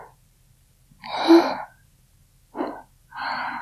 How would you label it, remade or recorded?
recorded